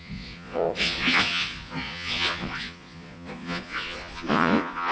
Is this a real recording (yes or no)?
no